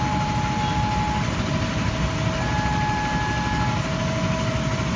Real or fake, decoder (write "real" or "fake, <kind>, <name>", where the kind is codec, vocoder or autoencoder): real